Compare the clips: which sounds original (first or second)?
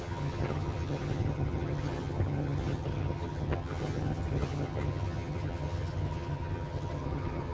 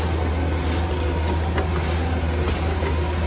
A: second